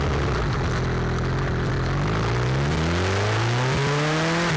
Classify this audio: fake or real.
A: real